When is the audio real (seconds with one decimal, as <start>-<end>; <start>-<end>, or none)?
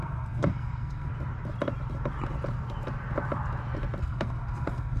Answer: 1.1-4.0